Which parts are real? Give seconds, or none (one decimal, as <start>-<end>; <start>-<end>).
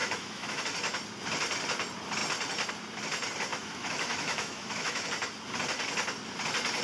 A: 0.6-3.5; 5.1-6.8